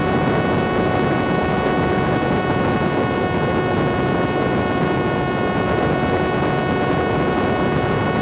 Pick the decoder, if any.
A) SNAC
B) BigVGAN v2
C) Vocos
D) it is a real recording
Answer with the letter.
D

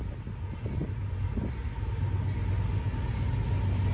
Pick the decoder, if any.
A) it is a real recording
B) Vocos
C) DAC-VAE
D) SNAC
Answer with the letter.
A